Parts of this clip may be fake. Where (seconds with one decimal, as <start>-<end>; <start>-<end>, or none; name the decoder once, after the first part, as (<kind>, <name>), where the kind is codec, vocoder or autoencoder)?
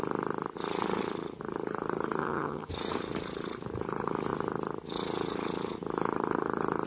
2.2-2.7 (vocoder, HiFi-GAN)